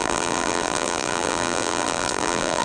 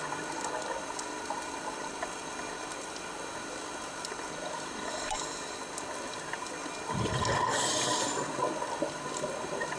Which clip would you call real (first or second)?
second